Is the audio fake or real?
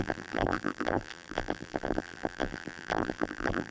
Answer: fake